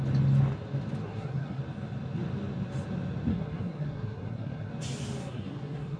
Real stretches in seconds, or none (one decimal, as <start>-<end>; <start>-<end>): 0.0-1.0; 1.6-3.3; 4.7-5.2